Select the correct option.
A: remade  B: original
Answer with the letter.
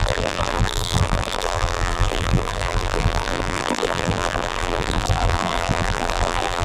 A